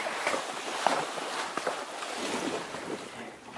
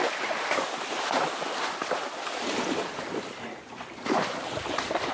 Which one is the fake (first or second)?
second